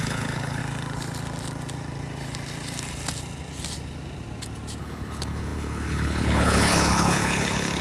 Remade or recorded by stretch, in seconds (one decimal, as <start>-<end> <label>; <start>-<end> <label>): 0.0-0.6 remade; 0.6-4.8 recorded; 4.8-7.8 remade